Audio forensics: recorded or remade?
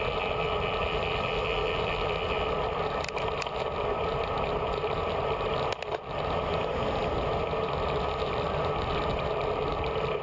recorded